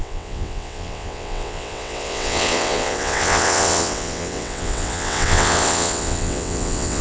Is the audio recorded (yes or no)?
no